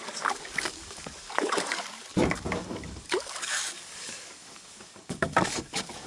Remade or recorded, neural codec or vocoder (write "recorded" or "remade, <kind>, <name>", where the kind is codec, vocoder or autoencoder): remade, codec, DAC